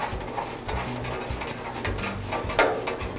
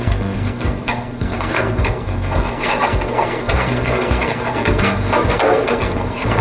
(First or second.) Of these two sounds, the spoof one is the second